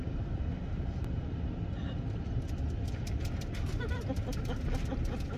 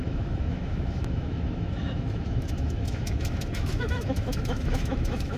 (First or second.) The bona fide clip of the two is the first